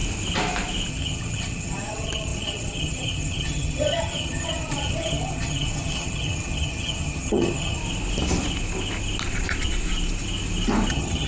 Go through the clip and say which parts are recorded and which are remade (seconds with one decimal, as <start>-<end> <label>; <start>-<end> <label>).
0.0-0.9 recorded; 0.9-7.8 remade; 7.8-10.9 recorded; 10.9-11.3 remade